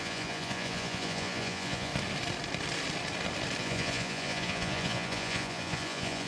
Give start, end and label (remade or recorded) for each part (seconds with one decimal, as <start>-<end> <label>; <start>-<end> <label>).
0.0-1.9 remade; 1.9-3.6 recorded; 3.6-6.3 remade